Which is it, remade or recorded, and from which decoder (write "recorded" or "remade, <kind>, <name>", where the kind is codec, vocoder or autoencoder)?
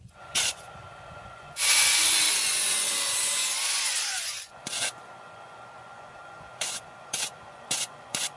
remade, vocoder, Vocos